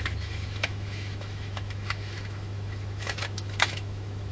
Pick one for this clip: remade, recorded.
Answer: remade